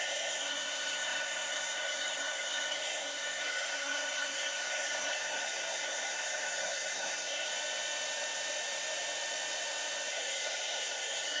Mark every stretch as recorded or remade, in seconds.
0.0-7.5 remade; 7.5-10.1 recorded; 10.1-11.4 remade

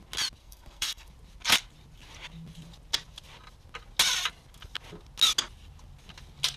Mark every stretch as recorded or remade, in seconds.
0.0-0.4 recorded; 0.4-1.1 remade; 1.1-6.6 recorded

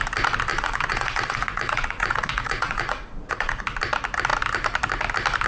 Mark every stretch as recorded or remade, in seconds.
0.0-0.5 recorded; 0.5-3.6 remade; 3.6-5.5 recorded

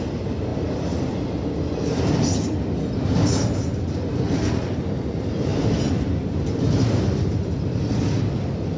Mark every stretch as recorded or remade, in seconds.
0.0-8.8 recorded